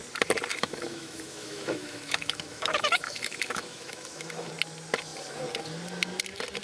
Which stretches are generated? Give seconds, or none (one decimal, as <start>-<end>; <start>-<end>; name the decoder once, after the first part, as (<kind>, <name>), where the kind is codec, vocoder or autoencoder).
0.5-4.5 (autoencoder, DAC-VAE)

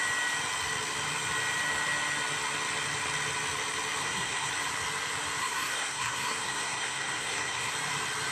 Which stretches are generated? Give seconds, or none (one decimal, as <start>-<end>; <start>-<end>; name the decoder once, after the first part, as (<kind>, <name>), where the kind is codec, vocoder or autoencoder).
4.0-4.5 (codec, SNAC); 5.4-7.7

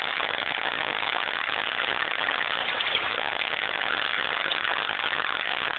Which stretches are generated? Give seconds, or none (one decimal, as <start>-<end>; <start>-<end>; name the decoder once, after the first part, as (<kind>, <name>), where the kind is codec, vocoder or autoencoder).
0.0-2.6 (vocoder, HiFi-GAN); 3.1-5.8

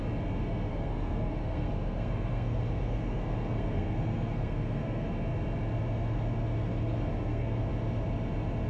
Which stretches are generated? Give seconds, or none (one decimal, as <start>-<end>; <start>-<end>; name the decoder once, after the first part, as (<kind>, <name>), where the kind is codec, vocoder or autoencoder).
0.7-5.1 (codec, SNAC); 6.7-7.6

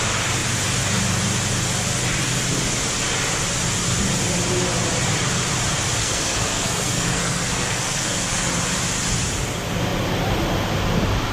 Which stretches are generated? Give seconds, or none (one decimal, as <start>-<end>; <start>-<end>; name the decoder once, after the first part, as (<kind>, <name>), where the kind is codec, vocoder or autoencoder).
6.0-8.5 (codec, SNAC)

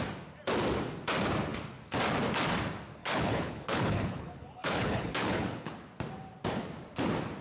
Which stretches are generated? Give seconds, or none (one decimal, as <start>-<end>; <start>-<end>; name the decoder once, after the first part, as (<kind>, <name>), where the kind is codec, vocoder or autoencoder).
3.0-5.9 (codec, HILCodec)